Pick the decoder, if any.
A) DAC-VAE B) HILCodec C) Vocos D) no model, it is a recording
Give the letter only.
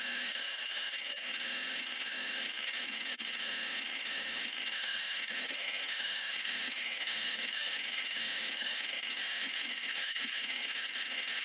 A